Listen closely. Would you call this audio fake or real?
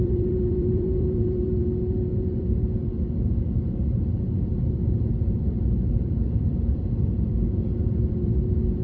fake